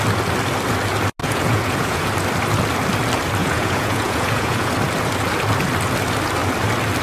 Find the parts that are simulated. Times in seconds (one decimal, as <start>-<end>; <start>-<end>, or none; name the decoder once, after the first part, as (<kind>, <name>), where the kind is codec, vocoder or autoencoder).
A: 1.2-2.1 (vocoder, Vocos); 3.4-4.7